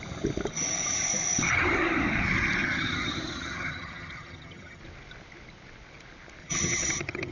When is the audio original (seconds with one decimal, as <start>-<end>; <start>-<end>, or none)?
0.0-2.6; 4.8-6.4